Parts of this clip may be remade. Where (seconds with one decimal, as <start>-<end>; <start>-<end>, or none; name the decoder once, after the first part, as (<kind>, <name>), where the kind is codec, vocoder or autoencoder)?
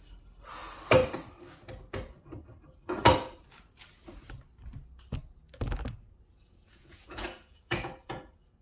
6.3-8.6 (vocoder, Vocos)